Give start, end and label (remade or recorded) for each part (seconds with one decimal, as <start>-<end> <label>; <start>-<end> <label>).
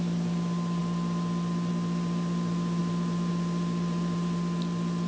0.0-5.1 remade